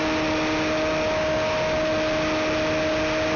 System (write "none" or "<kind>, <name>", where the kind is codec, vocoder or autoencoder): none